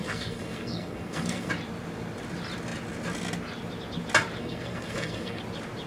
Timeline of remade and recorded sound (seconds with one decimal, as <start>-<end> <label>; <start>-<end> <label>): 0.0-1.5 remade; 1.5-4.4 recorded; 4.4-5.4 remade; 5.4-5.9 recorded